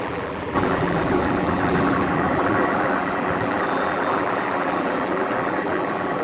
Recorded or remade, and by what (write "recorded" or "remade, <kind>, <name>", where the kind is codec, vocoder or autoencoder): remade, vocoder, BigVGAN v2